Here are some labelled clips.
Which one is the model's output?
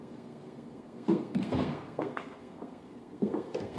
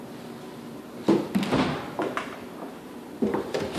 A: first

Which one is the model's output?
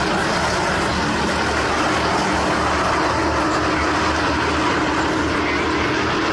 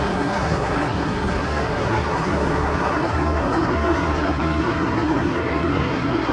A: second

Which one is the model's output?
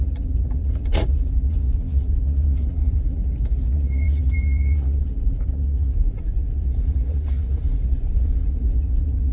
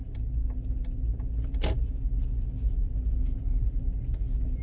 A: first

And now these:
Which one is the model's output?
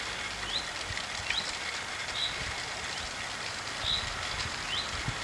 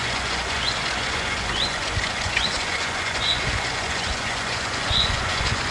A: second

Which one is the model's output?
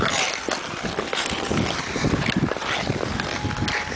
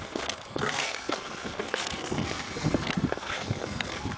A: second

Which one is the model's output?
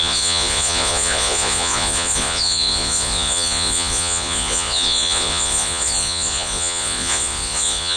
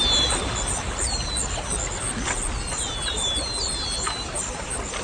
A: first